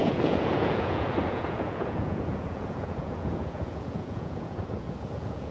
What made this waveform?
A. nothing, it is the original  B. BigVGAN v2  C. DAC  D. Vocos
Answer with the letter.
D